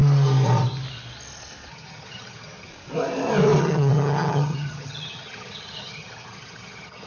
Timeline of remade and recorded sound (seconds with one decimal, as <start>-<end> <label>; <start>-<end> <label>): 0.0-1.7 recorded; 1.7-2.7 remade; 2.7-3.6 recorded; 3.6-7.1 remade